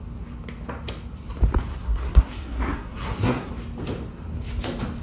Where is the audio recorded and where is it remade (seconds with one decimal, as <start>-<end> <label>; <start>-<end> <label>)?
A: 0.0-1.7 recorded; 1.7-3.5 remade; 3.5-5.0 recorded